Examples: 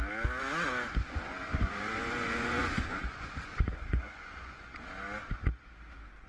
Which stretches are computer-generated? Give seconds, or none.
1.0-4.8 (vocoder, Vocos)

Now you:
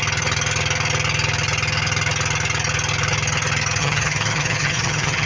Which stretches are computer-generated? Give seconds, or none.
3.8-5.3 (vocoder, HiFi-GAN)

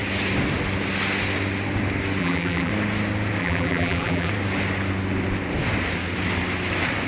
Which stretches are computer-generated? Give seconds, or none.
2.2-2.7 (vocoder, BigVGAN v2); 3.4-4.3

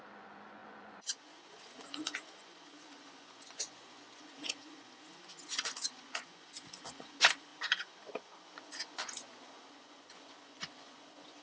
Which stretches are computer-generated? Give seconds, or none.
0.0-11.4 (vocoder, Vocos)

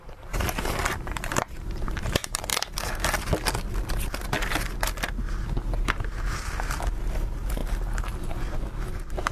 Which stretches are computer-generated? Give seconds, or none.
0.0-2.5 (vocoder, BigVGAN v2); 7.1-7.6; 8.8-9.3

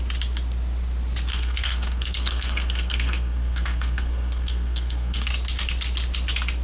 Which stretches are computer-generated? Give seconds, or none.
1.3-5.3 (codec, SNAC)

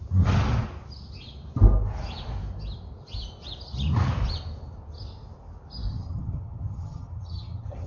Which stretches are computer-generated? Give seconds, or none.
5.9-7.9 (vocoder, HiFi-GAN)